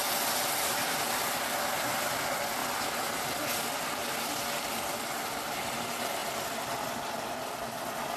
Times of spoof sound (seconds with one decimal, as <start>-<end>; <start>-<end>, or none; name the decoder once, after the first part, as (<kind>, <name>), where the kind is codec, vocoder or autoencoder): 0.0-0.7 (vocoder, BigVGAN v2); 4.0-4.8; 6.2-6.9